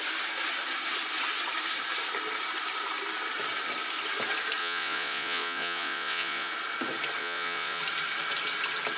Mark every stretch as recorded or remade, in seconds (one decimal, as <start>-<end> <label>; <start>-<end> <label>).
0.0-4.6 recorded; 4.6-6.5 remade; 6.5-7.2 recorded; 7.2-7.8 remade; 7.8-9.0 recorded